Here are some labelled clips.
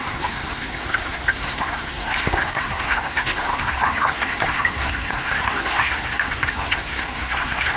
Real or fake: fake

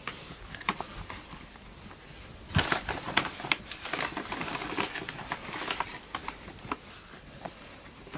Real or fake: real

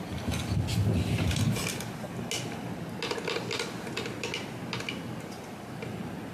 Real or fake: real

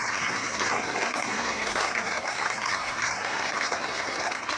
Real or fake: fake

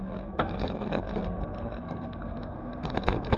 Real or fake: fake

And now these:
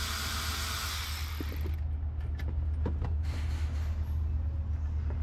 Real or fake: real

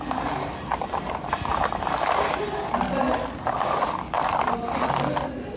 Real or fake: real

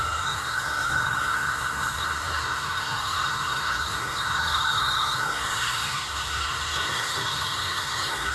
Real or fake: fake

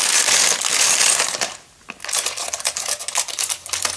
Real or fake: real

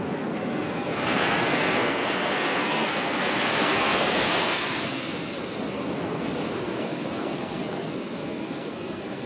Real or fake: fake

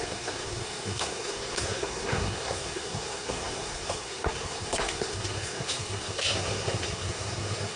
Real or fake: fake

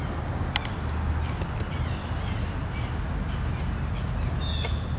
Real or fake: real